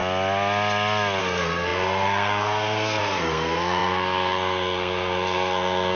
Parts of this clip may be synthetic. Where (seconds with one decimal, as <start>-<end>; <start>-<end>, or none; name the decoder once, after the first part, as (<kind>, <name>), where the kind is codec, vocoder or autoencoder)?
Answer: 1.2-6.0 (codec, SNAC)

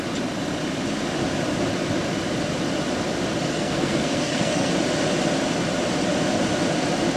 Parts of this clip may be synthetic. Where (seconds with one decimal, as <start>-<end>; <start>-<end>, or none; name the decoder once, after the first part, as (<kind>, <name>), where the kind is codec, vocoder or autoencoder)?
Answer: 3.5-4.7 (codec, SNAC)

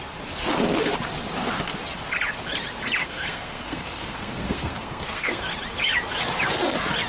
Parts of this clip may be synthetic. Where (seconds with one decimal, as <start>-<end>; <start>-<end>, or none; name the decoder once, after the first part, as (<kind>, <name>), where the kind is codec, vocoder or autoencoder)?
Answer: 3.0-5.4 (codec, SNAC)

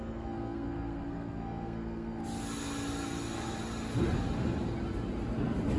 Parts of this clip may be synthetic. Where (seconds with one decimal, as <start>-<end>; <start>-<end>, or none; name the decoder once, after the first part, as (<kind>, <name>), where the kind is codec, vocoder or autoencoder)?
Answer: 0.0-2.2 (codec, SNAC)

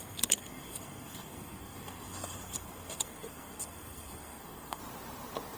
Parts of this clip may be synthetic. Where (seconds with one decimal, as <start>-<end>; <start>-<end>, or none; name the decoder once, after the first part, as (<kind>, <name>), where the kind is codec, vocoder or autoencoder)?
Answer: 0.0-4.8 (codec, SNAC)

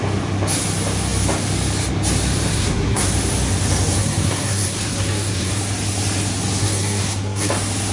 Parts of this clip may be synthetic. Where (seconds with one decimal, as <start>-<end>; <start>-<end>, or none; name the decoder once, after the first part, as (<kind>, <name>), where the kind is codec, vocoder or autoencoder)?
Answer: 2.5-3.1 (codec, SNAC); 4.0-5.5; 6.6-7.5

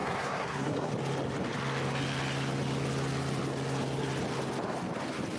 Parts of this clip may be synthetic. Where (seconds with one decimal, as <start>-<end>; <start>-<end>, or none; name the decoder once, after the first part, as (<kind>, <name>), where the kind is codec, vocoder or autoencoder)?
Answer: 0.0-0.9 (codec, SNAC)

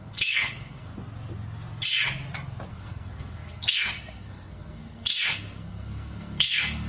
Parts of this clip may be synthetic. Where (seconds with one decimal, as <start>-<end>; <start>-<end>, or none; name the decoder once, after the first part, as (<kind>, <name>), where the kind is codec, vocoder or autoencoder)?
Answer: 0.0-0.9 (codec, SNAC); 2.7-6.9